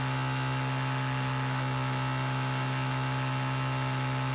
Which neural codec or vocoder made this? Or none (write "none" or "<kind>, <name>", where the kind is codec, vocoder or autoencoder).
none